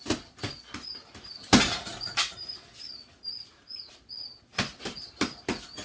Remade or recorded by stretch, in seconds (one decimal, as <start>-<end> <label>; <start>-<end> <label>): 0.0-3.5 recorded; 3.5-4.0 remade; 4.0-5.8 recorded